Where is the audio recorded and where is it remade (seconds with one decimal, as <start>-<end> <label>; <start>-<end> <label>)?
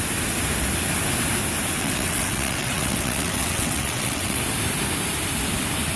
0.0-1.8 recorded; 1.8-4.4 remade; 4.4-6.0 recorded